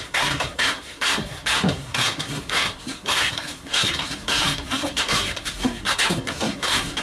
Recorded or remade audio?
remade